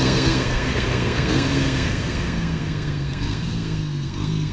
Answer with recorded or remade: remade